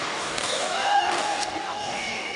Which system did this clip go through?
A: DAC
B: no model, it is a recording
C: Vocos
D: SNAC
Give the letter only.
A